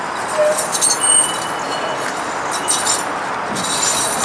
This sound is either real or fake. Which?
real